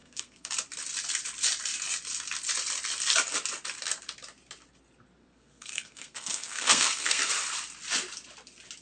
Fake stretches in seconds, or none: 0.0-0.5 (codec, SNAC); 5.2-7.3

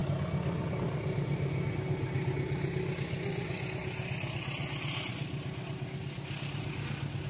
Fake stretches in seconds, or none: none

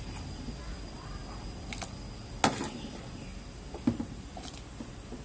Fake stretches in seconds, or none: none

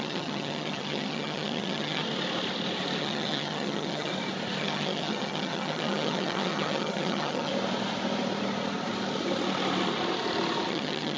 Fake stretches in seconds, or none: 0.0-2.0 (vocoder, HiFi-GAN); 3.0-4.1; 4.6-7.5; 10.7-11.2

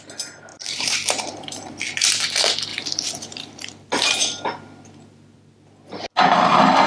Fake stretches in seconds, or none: 0.5-1.8 (vocoder, BigVGAN v2); 2.7-3.9